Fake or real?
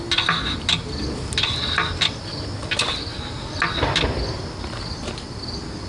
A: real